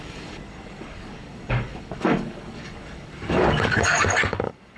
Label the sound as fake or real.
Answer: fake